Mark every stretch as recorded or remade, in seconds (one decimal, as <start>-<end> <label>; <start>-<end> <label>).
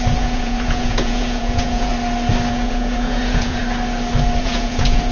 0.0-1.9 remade; 1.9-2.5 recorded; 2.5-3.6 remade; 3.6-4.4 recorded; 4.4-5.1 remade